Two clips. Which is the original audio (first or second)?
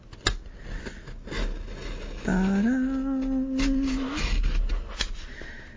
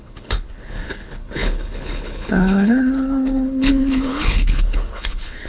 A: first